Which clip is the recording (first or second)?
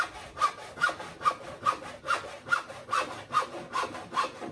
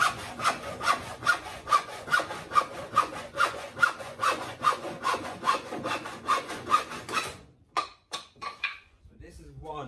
first